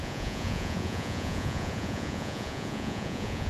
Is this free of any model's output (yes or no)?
no